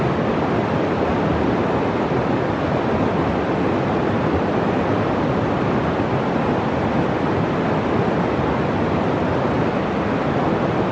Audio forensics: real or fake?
real